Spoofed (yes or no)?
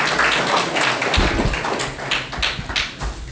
no